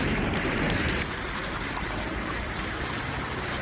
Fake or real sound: fake